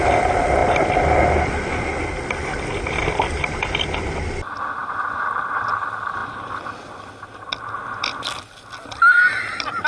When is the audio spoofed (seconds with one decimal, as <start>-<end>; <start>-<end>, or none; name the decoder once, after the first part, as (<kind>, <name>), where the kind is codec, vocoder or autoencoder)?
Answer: none